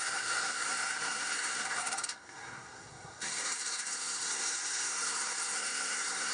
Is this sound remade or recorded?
remade